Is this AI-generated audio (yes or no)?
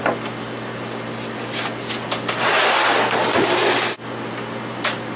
no